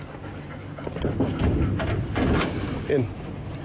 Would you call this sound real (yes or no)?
yes